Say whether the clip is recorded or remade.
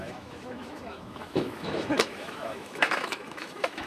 remade